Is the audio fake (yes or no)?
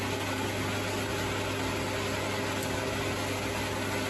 no